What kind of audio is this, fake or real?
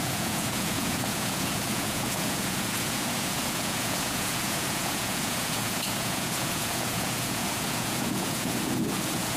fake